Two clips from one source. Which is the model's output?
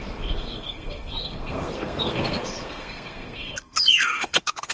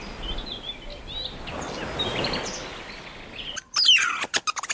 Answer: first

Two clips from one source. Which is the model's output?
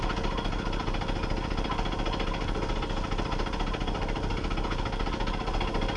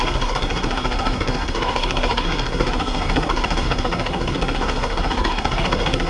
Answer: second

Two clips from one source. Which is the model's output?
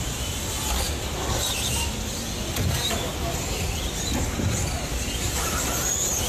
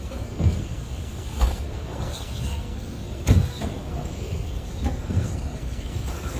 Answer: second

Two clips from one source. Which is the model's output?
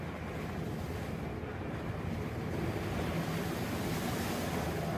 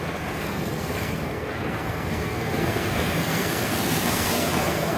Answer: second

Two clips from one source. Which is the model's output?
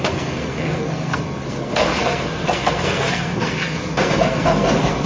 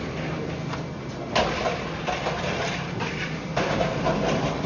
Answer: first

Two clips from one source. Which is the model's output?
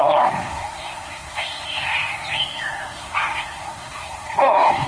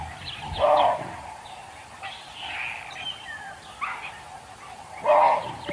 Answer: first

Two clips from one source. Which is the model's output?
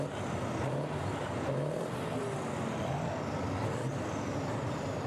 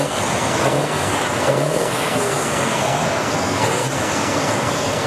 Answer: second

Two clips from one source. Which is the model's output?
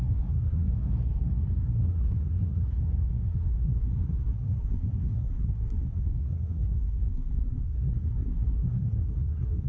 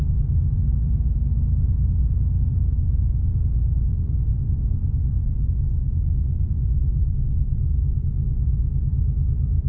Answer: first